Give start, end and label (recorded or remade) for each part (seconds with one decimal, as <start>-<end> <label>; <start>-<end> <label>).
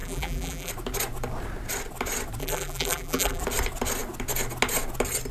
0.0-0.7 remade; 0.7-2.4 recorded; 2.4-3.4 remade; 3.4-5.3 recorded